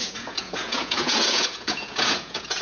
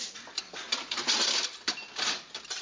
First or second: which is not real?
first